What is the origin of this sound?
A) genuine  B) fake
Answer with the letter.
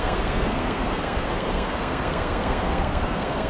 B